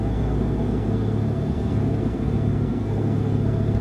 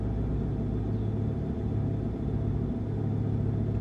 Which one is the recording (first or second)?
second